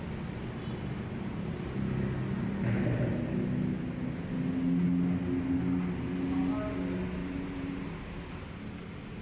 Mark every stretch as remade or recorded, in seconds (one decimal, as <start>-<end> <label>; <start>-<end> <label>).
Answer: 0.0-7.2 recorded; 7.2-7.8 remade; 7.8-9.2 recorded